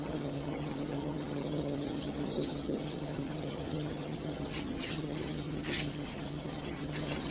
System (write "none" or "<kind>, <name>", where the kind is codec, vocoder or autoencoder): vocoder, HiFi-GAN